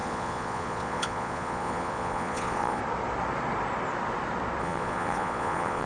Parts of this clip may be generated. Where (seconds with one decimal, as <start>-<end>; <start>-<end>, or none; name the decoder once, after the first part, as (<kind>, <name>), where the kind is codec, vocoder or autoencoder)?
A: 0.0-2.8 (vocoder, Vocos); 4.6-5.9